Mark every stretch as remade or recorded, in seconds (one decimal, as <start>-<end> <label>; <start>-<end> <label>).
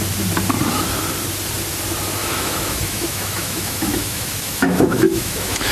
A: 0.0-2.2 recorded; 2.2-5.7 remade